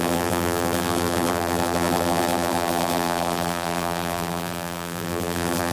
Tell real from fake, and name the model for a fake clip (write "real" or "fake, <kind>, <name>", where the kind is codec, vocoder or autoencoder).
fake, vocoder, BigVGAN v2